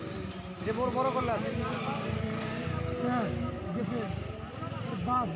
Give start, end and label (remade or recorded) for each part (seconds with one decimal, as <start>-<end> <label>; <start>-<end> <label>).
0.0-5.4 recorded